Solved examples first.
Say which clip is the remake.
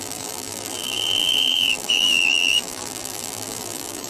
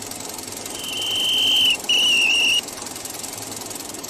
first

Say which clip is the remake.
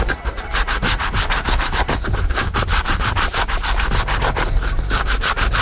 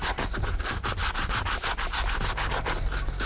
first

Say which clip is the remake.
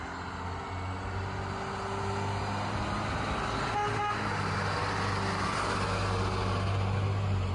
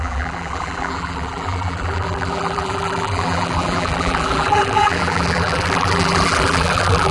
second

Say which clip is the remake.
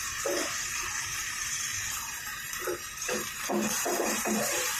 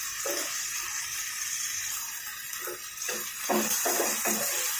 first